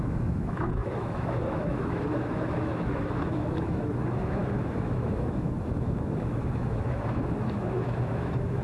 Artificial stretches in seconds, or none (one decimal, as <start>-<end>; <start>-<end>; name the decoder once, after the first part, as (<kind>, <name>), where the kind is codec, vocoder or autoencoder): 0.0-8.6 (autoencoder, DAC-VAE)